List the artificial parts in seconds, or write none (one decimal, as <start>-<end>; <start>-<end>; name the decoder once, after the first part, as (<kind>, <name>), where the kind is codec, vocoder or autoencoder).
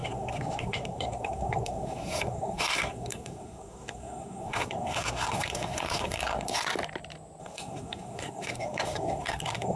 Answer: 0.0-6.7 (codec, SNAC); 7.4-9.8